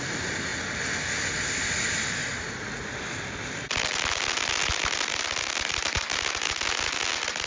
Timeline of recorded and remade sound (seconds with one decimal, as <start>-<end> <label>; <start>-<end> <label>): 0.0-7.5 recorded

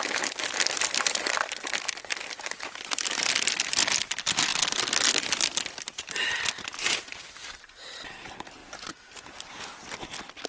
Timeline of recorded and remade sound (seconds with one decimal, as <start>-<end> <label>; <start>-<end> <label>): 0.0-4.5 recorded; 4.5-6.5 remade; 6.5-8.6 recorded; 8.6-9.2 remade; 9.2-10.5 recorded

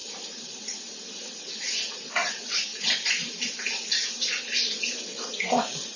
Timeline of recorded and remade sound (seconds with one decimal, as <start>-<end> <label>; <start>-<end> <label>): 0.0-1.9 recorded; 1.9-2.7 remade; 2.7-5.2 recorded; 5.2-6.0 remade

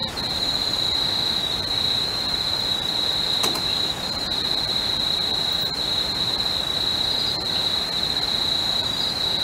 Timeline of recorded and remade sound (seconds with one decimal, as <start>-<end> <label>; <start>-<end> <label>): 0.0-9.4 recorded

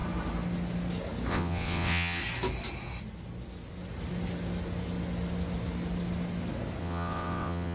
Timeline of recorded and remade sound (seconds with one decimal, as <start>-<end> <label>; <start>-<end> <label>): 0.0-1.3 recorded; 1.3-2.2 remade; 2.2-6.8 recorded; 6.8-7.7 remade

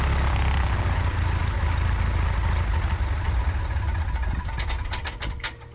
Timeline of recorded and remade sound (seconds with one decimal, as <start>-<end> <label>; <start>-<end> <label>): 0.0-5.7 recorded